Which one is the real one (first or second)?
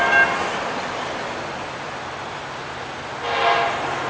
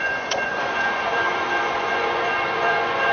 first